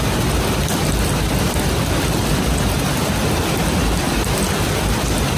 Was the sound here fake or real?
real